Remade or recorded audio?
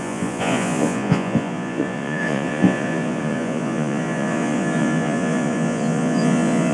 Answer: remade